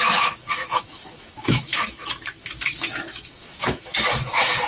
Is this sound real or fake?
fake